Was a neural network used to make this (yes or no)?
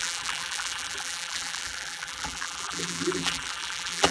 yes